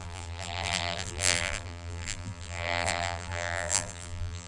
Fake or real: fake